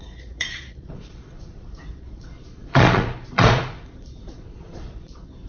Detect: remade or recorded remade